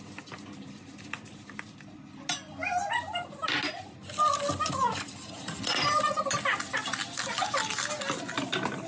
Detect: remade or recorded recorded